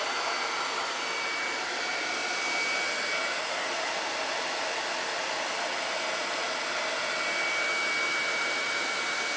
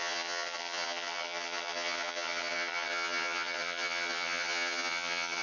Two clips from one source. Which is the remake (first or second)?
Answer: second